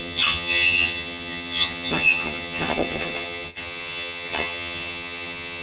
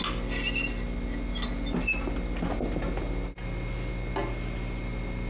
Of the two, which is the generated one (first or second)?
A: first